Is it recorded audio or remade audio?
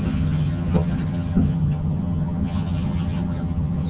remade